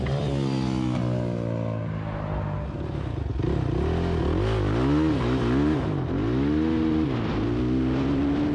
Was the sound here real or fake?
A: real